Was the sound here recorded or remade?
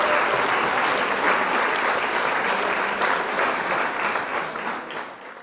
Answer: recorded